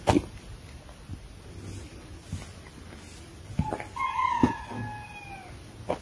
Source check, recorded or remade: recorded